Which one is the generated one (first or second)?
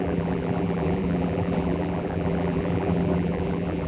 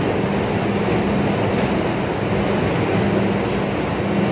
first